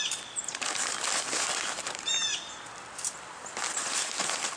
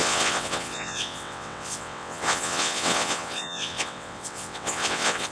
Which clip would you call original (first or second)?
first